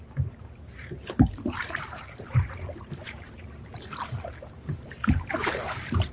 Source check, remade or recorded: remade